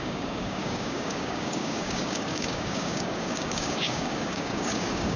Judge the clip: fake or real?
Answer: fake